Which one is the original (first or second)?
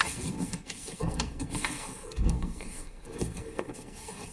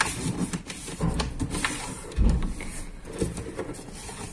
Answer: second